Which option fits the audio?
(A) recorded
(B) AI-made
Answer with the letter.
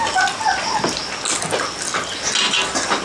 A